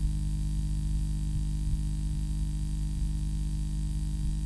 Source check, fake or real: real